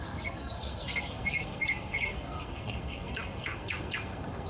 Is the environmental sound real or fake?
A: fake